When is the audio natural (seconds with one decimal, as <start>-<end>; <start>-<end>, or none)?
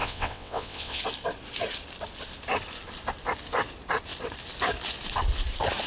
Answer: 1.0-5.9